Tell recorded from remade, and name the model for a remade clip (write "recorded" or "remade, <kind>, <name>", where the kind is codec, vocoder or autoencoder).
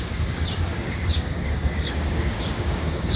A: remade, codec, DAC